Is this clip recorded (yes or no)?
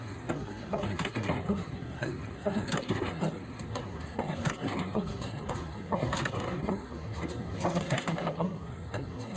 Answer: no